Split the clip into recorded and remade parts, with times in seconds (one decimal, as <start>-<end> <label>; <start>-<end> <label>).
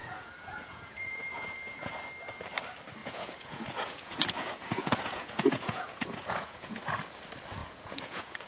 0.0-1.9 remade; 1.9-3.0 recorded; 3.0-6.8 remade; 6.8-7.6 recorded; 7.6-8.5 remade